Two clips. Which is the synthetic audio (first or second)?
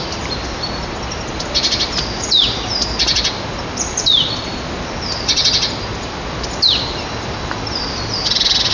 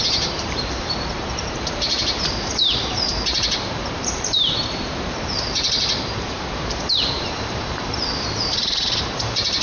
second